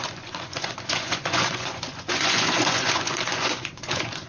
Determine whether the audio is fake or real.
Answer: fake